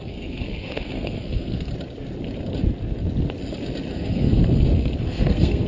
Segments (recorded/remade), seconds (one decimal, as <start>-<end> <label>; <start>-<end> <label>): 0.0-1.7 remade; 1.7-3.9 recorded; 3.9-4.4 remade; 4.4-5.0 recorded; 5.0-5.7 remade